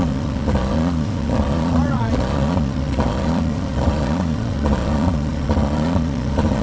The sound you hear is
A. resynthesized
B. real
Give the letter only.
A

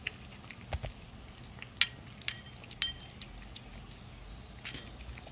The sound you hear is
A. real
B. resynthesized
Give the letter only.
A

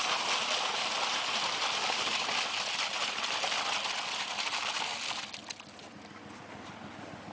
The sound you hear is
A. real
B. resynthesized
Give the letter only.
A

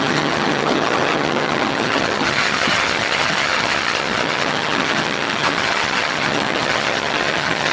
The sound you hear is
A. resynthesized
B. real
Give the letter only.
A